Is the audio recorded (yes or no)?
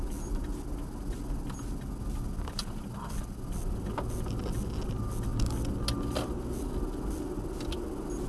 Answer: yes